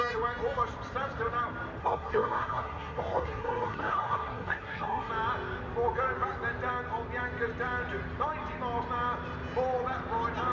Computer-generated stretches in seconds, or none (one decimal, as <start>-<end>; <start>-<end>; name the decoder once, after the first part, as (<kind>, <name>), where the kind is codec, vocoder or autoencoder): 1.8-5.1 (codec, SNAC)